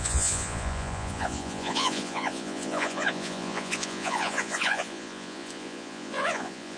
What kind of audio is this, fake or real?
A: fake